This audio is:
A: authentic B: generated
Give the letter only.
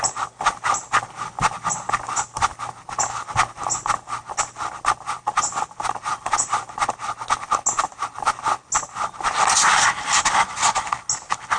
A